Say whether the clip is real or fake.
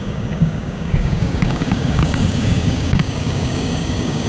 fake